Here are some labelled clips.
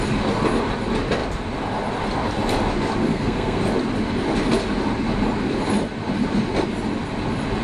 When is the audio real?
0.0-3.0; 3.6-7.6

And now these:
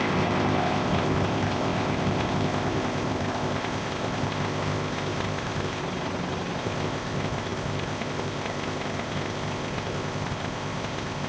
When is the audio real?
5.8-6.6

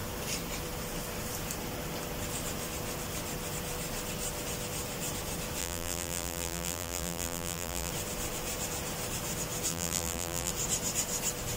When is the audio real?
0.0-5.6; 7.9-9.7; 10.5-11.6

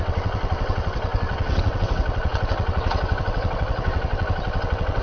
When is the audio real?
none

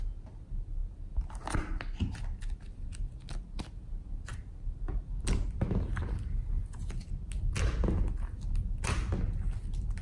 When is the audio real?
0.0-10.0

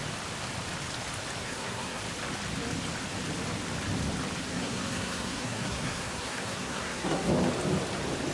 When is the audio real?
0.0-1.4; 2.0-4.5; 7.3-8.3